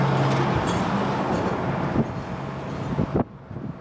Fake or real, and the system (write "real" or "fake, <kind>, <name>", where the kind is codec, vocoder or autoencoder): real